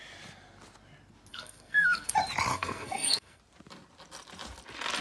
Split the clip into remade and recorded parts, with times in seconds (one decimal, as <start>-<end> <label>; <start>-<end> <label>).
0.0-1.3 recorded; 1.3-2.1 remade; 2.1-2.5 recorded; 2.5-3.4 remade; 3.4-5.0 recorded